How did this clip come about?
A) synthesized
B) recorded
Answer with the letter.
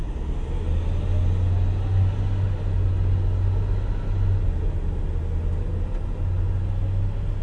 B